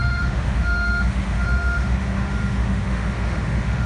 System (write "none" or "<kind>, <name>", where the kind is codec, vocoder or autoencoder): autoencoder, DAC-VAE